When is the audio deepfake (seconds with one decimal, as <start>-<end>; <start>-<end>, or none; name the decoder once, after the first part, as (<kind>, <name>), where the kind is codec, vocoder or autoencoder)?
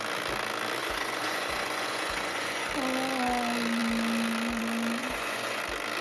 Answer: 0.8-2.7 (vocoder, Vocos); 5.0-5.6